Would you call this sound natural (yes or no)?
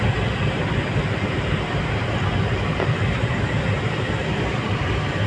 yes